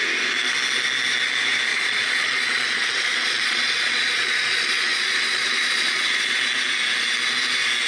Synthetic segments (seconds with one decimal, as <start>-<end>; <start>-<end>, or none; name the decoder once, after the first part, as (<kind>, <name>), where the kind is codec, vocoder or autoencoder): 1.7-6.4 (vocoder, Vocos)